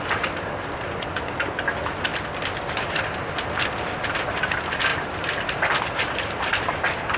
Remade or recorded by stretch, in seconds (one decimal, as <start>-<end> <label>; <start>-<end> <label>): 0.0-2.1 recorded; 2.1-3.5 remade; 3.5-4.9 recorded; 4.9-6.7 remade; 6.7-7.2 recorded